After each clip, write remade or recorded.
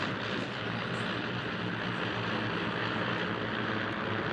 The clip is recorded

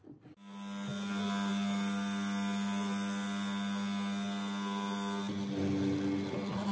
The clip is recorded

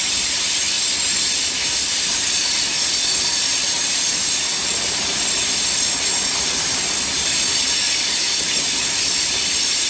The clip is recorded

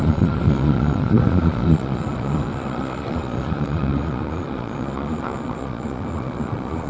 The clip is remade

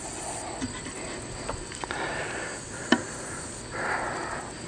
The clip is recorded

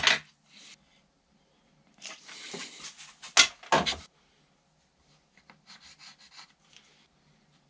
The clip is recorded